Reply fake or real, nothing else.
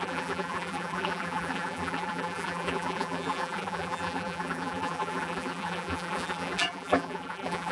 fake